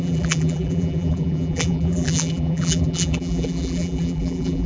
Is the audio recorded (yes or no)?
no